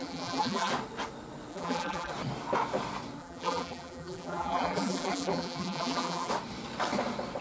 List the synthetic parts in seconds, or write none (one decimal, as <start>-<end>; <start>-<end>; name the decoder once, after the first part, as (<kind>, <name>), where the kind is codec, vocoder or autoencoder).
0.0-0.7 (vocoder, BigVGAN v2); 1.5-2.1; 3.2-6.3